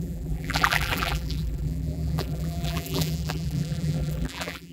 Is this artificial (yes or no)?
yes